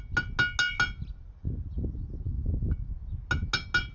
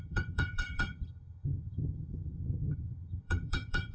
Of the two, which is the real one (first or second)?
first